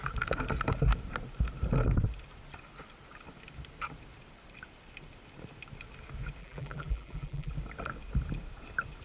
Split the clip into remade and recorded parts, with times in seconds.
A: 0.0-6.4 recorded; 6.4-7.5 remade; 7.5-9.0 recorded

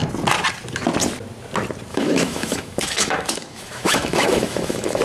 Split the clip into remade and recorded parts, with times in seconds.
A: 0.0-1.9 recorded; 1.9-5.0 remade

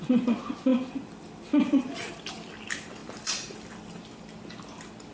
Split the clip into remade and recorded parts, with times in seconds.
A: 0.0-0.7 recorded; 0.7-2.1 remade; 2.1-3.0 recorded; 3.0-4.0 remade; 4.0-5.1 recorded

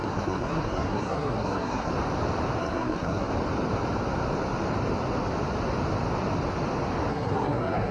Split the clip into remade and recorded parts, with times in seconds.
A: 0.0-1.9 remade; 1.9-2.6 recorded; 2.6-3.3 remade; 3.3-7.1 recorded; 7.1-7.9 remade